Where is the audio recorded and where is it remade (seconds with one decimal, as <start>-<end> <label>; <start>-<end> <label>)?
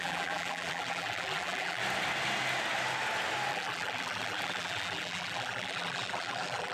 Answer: 0.0-1.8 remade; 1.8-3.5 recorded; 3.5-6.7 remade